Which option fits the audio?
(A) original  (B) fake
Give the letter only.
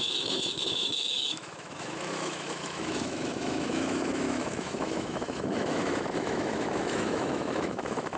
B